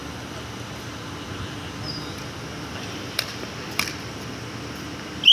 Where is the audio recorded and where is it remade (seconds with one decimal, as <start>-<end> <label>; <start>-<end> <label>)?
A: 0.0-5.3 recorded